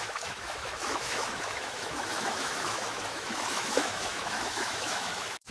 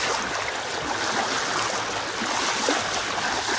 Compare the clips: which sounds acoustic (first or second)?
second